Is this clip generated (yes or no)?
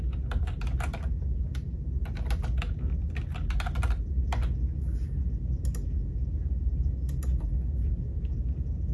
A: no